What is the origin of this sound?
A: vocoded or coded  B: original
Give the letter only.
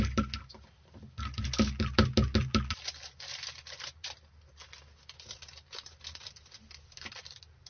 B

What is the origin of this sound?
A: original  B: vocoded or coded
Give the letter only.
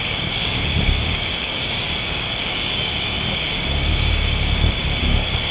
B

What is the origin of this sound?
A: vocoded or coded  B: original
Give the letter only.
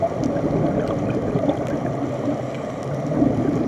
B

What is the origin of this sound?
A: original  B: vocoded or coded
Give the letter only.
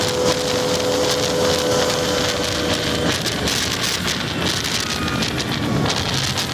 A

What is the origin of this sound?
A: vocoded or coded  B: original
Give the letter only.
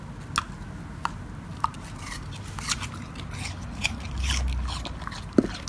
B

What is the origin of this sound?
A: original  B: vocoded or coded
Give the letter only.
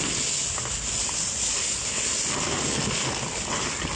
A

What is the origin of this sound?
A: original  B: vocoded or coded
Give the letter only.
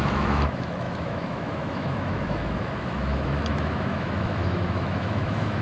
B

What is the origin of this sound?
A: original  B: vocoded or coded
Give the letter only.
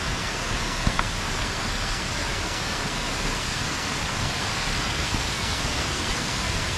B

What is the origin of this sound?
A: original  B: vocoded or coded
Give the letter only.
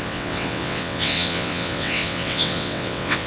B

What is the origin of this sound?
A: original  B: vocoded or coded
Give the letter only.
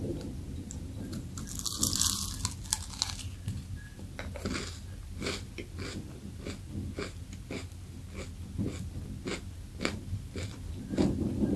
A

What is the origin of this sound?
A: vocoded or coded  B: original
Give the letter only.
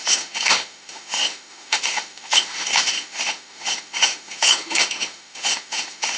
A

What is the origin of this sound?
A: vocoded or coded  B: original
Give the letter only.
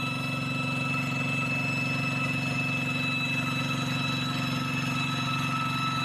B